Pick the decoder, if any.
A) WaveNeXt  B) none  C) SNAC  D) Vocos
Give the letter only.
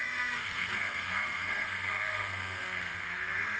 C